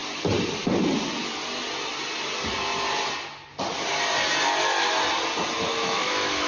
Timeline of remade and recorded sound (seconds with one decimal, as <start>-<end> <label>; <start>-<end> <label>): 0.0-5.7 recorded; 5.7-6.5 remade

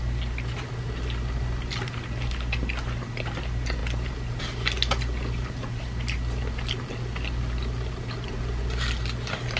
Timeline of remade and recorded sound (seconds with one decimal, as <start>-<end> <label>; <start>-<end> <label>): 0.0-9.6 recorded

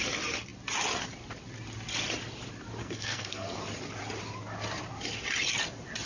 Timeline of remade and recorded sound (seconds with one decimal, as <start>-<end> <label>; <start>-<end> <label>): 0.0-2.8 recorded; 2.8-3.6 remade; 3.6-6.1 recorded

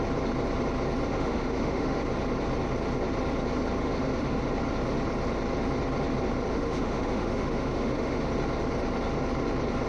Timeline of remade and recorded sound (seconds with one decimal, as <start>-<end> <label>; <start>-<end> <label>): 0.0-1.1 recorded; 1.1-2.0 remade; 2.0-3.8 recorded; 3.8-4.4 remade; 4.4-6.5 recorded; 6.5-8.3 remade; 8.3-9.9 recorded

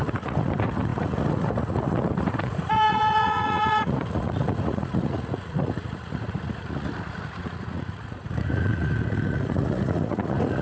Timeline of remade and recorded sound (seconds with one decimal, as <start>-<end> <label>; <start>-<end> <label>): 0.0-10.6 remade

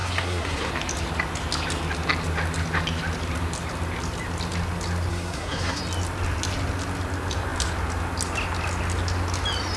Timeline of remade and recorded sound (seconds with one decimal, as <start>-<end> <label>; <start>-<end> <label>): 0.0-0.7 remade; 0.7-5.1 recorded; 5.1-5.8 remade; 5.8-9.8 recorded

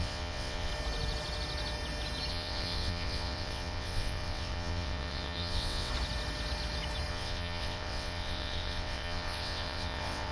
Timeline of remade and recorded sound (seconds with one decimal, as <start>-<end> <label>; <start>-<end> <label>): 0.0-0.7 remade; 0.7-2.3 recorded; 2.3-5.9 remade; 5.9-7.1 recorded; 7.1-10.3 remade

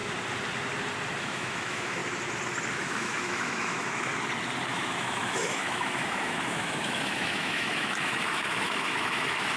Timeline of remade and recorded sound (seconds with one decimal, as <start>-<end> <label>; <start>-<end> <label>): 0.0-1.2 recorded; 1.2-2.0 remade; 2.0-2.7 recorded; 2.7-4.1 remade; 4.1-4.7 recorded; 4.7-9.6 remade